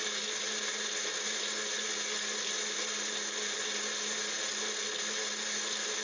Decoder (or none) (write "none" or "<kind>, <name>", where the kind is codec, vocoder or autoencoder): none